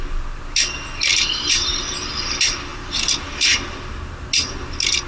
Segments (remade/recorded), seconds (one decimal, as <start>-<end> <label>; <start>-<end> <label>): 0.0-1.1 recorded; 1.1-1.8 remade; 1.8-5.1 recorded